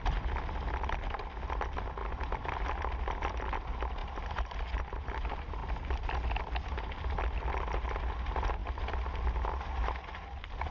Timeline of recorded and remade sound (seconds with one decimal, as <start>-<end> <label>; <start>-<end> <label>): 0.0-10.7 recorded

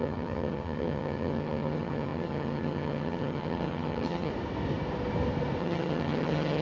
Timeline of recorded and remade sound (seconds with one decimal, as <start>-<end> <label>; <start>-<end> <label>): 0.0-4.3 remade; 4.3-5.6 recorded; 5.6-6.6 remade

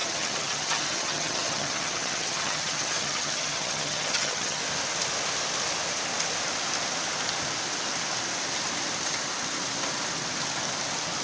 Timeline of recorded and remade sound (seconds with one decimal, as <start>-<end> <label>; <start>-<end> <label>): 0.0-4.6 remade; 4.6-11.2 recorded

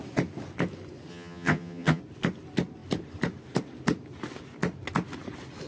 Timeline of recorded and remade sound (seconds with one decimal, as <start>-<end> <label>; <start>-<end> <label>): 0.0-1.1 recorded; 1.1-2.0 remade; 2.0-5.7 recorded

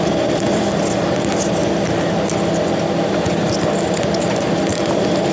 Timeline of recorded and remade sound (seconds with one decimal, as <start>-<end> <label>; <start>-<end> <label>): 0.0-5.3 recorded

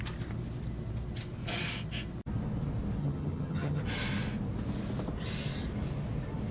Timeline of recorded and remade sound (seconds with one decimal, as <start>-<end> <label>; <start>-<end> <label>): 0.0-3.0 recorded; 3.0-3.8 remade; 3.8-6.5 recorded

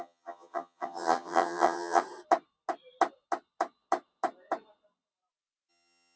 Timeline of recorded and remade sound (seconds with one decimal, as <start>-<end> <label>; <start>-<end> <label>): 0.0-2.0 remade; 2.0-5.7 recorded; 5.7-6.2 remade

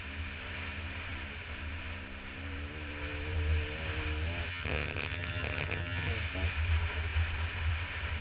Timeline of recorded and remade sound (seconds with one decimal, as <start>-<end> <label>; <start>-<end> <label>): 0.0-4.5 recorded; 4.5-6.1 remade; 6.1-8.2 recorded